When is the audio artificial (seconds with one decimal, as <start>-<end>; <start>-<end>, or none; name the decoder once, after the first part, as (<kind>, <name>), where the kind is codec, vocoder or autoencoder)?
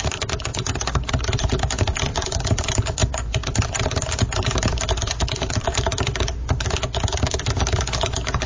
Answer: 2.1-2.6 (vocoder, BigVGAN v2); 3.0-6.5